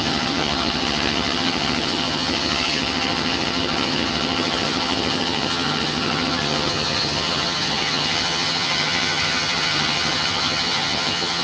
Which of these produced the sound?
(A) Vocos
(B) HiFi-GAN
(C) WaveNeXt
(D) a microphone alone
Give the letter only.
B